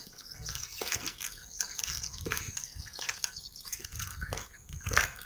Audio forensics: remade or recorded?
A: remade